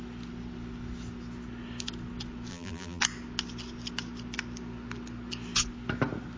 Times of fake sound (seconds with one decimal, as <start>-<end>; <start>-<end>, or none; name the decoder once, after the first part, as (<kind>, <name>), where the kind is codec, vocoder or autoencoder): 2.5-3.0 (vocoder, BigVGAN v2)